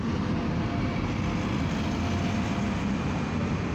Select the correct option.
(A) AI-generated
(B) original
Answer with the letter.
B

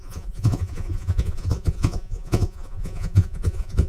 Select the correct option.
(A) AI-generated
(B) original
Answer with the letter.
A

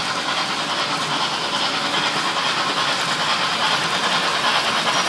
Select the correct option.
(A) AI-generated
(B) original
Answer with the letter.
B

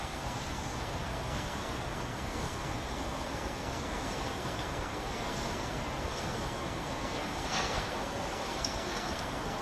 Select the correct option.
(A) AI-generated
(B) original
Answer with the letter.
A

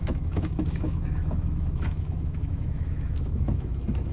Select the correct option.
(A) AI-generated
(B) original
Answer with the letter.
A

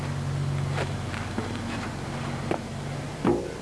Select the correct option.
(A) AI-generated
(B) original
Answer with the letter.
B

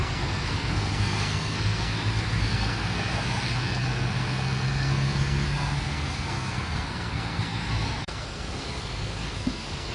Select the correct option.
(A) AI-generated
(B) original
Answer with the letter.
A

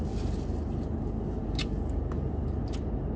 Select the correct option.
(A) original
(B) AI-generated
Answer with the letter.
A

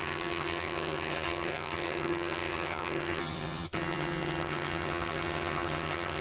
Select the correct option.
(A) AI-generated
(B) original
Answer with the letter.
A